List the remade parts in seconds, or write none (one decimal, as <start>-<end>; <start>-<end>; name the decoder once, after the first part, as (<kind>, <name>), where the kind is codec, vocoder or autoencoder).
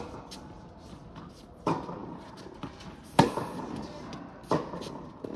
none